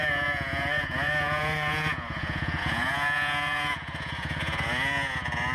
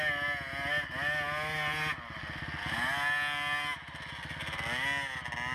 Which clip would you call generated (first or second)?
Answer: first